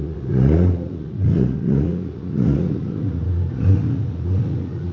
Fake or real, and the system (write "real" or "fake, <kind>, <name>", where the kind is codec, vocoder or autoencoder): fake, vocoder, Vocos